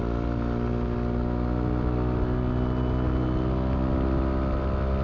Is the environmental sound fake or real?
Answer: real